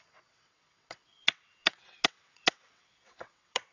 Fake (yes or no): yes